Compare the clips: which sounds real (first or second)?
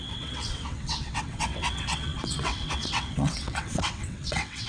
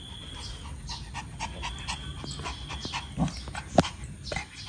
second